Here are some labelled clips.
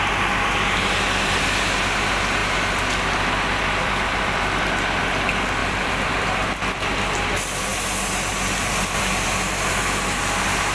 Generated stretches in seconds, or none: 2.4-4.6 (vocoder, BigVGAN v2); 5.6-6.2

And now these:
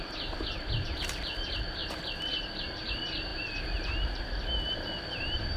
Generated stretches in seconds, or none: 0.0-1.8 (vocoder, BigVGAN v2); 2.3-5.6

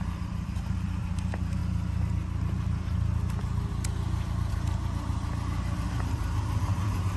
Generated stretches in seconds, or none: 0.0-1.6 (vocoder, BigVGAN v2); 4.5-7.2

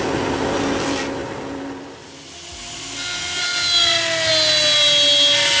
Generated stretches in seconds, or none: none

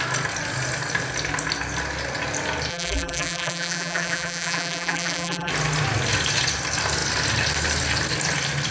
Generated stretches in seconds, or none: 2.7-5.5 (vocoder, BigVGAN v2)

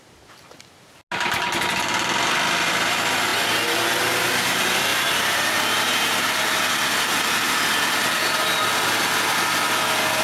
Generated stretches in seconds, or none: 4.9-6.6 (vocoder, BigVGAN v2)

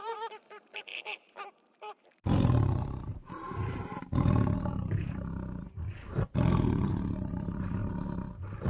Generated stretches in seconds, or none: 0.0-7.8 (vocoder, BigVGAN v2)

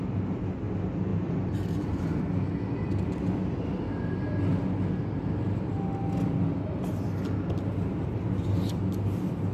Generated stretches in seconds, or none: none